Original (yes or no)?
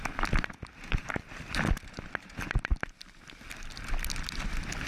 yes